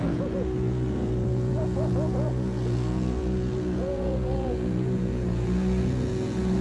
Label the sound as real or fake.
fake